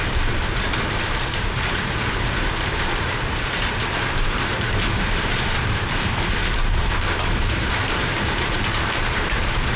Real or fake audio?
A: fake